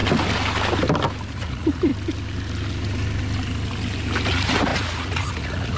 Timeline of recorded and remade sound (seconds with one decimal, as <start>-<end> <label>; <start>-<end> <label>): 0.0-1.3 recorded; 1.3-1.9 remade; 1.9-4.3 recorded; 4.3-5.8 remade